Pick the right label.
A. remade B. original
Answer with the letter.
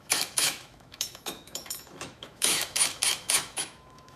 A